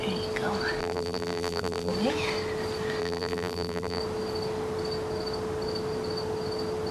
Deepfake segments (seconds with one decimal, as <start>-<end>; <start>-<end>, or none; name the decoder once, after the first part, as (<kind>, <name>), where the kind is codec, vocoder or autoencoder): 0.8-1.9 (vocoder, BigVGAN v2); 3.0-4.0